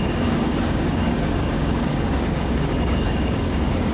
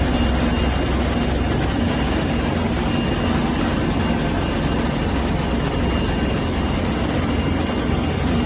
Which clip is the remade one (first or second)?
first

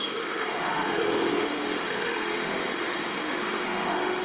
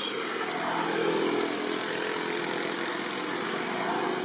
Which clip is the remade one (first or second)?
first